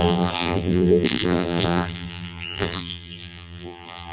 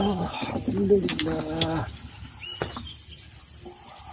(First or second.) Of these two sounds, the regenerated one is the first